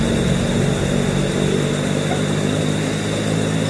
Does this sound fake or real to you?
real